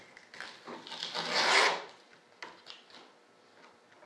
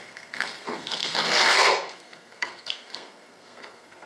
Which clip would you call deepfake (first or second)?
second